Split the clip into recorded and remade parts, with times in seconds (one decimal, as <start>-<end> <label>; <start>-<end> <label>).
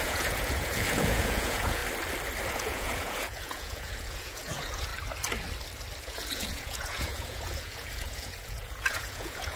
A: 0.0-1.8 remade; 1.8-2.5 recorded; 2.5-4.9 remade; 4.9-6.0 recorded; 6.0-9.6 remade